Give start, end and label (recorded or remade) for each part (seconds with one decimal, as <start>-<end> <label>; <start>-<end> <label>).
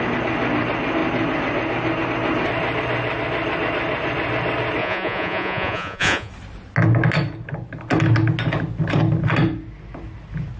0.0-4.8 recorded; 4.8-6.3 remade; 6.3-10.6 recorded